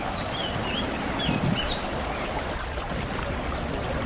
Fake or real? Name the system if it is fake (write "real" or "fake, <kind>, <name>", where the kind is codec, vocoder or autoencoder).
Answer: real